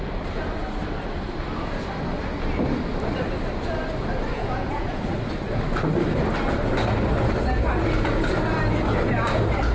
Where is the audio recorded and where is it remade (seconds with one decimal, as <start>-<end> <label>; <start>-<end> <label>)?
0.0-4.3 recorded; 4.3-5.0 remade; 5.0-9.7 recorded